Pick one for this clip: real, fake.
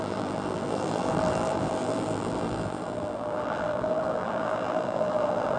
fake